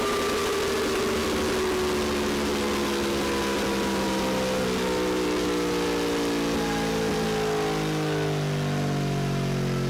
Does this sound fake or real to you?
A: real